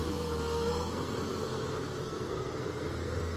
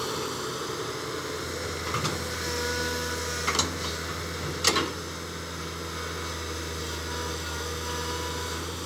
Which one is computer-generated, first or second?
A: first